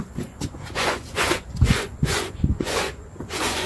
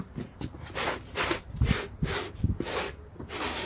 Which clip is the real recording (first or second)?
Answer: second